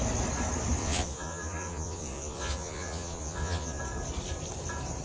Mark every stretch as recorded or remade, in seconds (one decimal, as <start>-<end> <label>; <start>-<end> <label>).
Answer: 0.0-0.8 recorded; 0.8-3.8 remade; 3.8-5.0 recorded